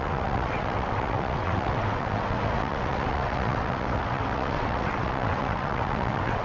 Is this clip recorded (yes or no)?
no